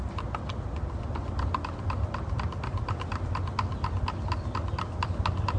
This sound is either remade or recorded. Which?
recorded